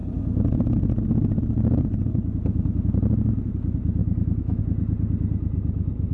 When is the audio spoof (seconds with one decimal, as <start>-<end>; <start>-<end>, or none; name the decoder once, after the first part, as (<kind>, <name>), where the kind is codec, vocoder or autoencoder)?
4.0-4.6 (autoencoder, DAC-VAE)

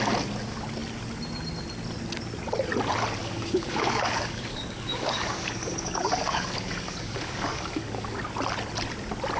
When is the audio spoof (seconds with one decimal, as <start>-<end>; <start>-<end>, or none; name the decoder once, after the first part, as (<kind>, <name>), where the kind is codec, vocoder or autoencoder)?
3.2-8.2 (codec, DAC)

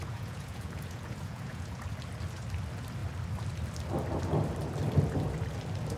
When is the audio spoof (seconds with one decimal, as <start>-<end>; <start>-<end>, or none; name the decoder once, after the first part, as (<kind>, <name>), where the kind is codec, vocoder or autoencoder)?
0.0-1.8 (vocoder, Vocos)

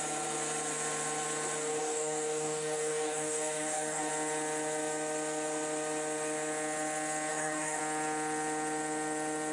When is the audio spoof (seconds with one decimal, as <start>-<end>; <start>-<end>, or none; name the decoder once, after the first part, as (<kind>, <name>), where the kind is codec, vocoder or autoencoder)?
1.8-4.1 (codec, DAC); 7.3-7.8

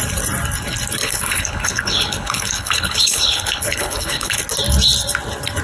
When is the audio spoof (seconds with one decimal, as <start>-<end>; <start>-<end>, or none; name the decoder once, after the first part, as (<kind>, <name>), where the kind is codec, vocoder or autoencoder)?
1.0-4.4 (codec, HILCodec)

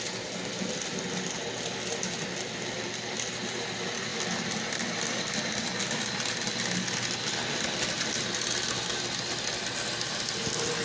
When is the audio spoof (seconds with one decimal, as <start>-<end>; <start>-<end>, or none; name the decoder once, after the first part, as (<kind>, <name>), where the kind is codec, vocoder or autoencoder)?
none

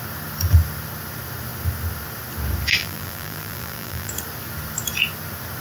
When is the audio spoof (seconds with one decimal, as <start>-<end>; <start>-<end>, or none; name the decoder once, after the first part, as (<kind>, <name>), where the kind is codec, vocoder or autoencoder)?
2.8-4.1 (vocoder, BigVGAN v2)